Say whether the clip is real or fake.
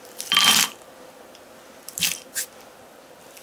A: real